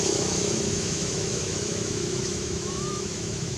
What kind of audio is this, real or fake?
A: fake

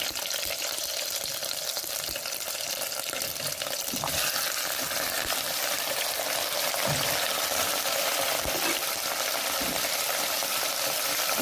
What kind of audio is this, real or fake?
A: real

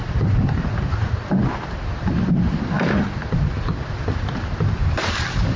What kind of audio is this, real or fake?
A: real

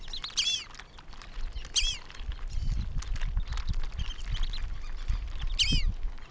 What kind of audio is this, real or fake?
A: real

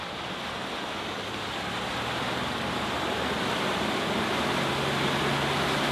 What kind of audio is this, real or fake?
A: real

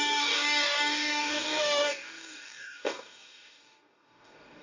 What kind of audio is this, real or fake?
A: fake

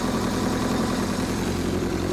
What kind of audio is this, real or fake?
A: real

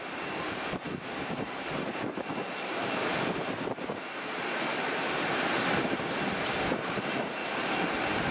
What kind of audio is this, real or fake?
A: fake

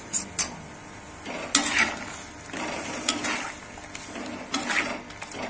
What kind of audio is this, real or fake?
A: real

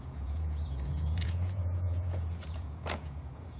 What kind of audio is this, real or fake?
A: fake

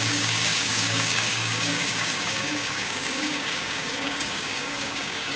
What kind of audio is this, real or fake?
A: fake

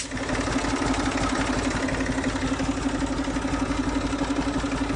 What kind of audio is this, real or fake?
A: real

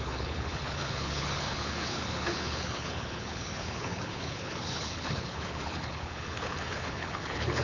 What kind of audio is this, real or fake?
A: fake